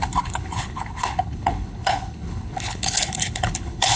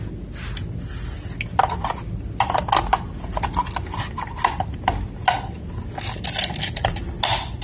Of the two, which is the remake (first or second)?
first